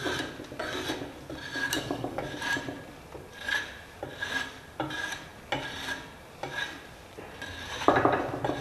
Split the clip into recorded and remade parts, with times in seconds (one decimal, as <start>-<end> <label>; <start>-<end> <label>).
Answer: 0.0-1.6 recorded; 1.6-2.2 remade; 2.2-8.6 recorded